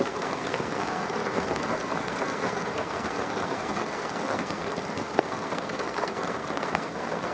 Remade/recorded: remade